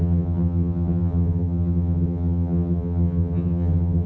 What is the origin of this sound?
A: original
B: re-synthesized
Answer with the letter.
B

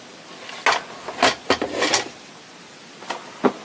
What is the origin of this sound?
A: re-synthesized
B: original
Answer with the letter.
B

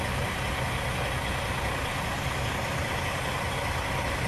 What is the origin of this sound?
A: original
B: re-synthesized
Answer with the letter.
A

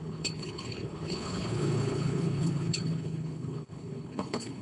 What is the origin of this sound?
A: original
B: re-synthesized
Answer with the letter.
B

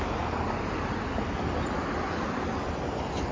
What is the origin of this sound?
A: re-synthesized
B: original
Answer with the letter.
B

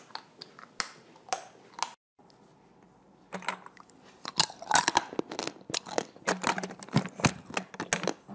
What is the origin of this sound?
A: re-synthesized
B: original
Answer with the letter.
B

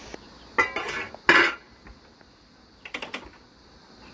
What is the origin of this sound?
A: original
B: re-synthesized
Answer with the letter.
A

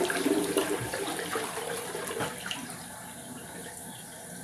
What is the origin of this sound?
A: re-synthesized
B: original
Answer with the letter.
A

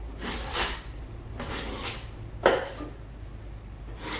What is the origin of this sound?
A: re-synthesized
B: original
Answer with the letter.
B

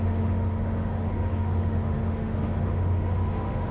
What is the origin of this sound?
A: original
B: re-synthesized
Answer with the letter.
B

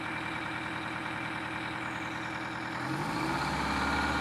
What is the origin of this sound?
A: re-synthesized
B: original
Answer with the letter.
B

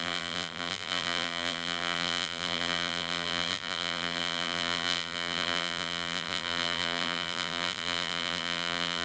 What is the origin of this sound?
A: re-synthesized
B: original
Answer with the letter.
A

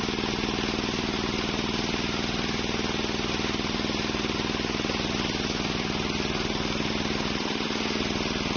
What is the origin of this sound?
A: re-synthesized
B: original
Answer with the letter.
B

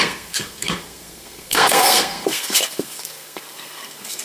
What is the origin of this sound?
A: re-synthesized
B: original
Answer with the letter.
A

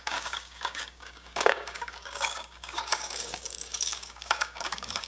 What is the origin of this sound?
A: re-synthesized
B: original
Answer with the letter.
A